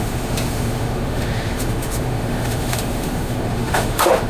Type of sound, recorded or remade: remade